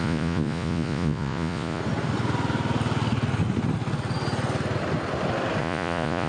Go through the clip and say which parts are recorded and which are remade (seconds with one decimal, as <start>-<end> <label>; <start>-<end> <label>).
0.0-1.8 remade; 1.8-5.6 recorded; 5.6-6.3 remade